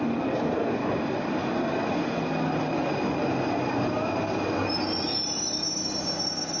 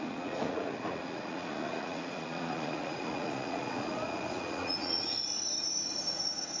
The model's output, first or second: second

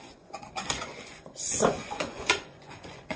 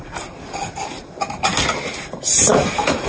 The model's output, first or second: first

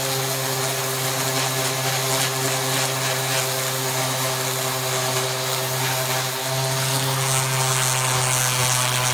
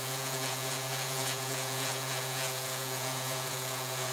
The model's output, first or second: second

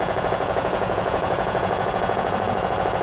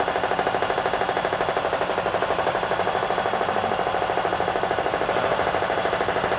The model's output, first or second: first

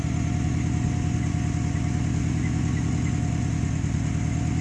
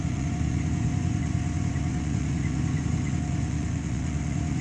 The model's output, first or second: second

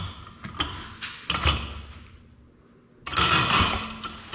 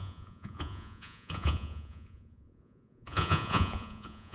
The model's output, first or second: second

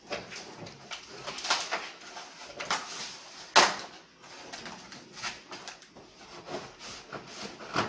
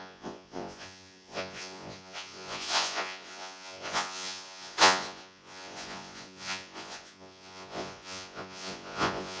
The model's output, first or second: second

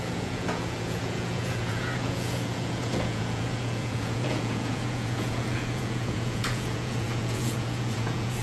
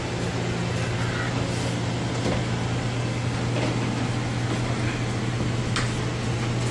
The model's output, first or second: first